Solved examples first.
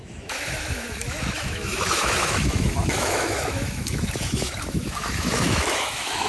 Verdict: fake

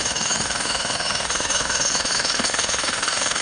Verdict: fake